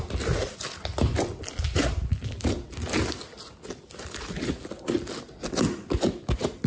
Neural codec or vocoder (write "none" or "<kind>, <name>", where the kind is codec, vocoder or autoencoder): none